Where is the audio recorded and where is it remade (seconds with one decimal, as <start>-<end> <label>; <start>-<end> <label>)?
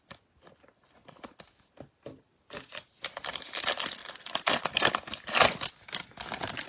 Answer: 0.0-6.7 recorded